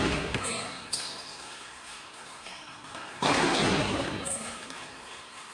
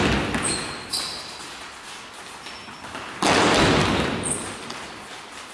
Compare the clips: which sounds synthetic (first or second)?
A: first